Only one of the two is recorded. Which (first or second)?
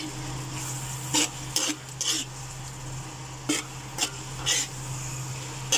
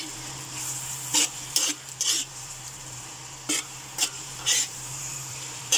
first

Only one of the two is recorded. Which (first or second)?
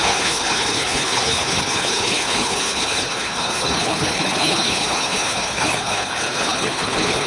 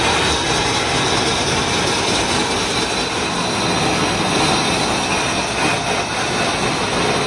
second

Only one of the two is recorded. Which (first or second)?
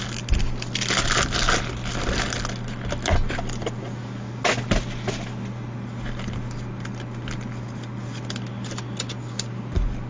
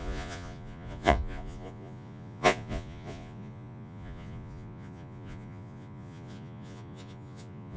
first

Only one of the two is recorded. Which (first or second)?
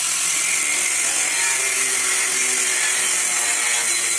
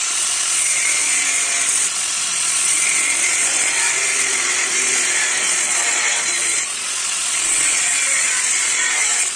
first